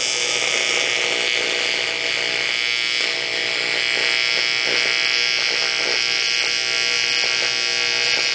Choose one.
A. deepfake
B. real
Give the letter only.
B